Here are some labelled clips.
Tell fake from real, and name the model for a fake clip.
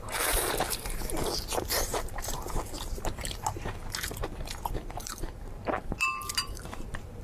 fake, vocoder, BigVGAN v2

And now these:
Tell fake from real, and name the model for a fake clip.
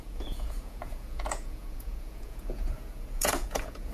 fake, vocoder, Vocos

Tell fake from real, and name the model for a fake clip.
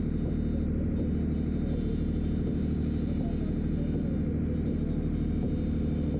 real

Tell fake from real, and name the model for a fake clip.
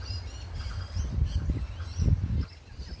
real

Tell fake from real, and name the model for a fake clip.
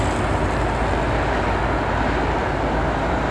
real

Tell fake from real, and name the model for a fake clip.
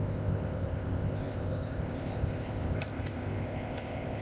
fake, codec, ZipCodec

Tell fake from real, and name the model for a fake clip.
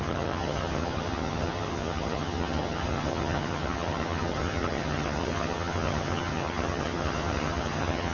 fake, vocoder, HiFi-GAN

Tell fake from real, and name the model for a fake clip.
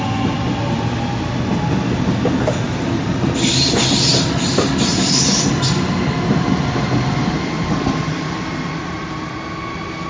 real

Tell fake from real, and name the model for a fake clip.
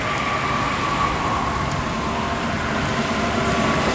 real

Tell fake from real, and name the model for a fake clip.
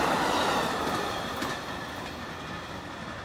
real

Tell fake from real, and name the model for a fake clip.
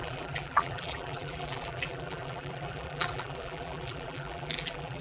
fake, vocoder, BigVGAN v2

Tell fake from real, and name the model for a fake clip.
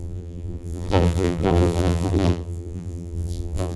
fake, vocoder, BigVGAN v2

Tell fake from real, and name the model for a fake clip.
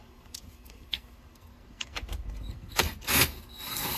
fake, codec, SNAC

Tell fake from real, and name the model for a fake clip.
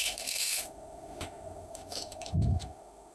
fake, autoencoder, DAC-VAE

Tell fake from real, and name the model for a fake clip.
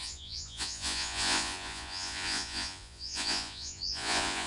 fake, vocoder, Vocos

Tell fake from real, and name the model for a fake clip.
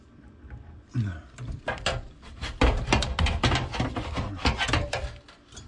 real